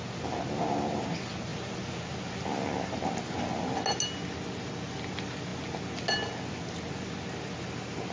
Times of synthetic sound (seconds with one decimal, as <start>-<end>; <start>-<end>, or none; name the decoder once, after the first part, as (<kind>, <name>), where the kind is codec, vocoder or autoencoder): none